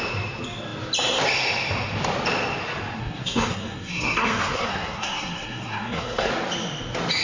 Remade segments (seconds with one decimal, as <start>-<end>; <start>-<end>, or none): 3.0-6.3